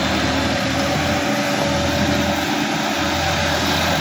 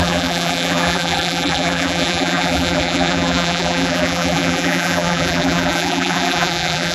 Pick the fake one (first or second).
second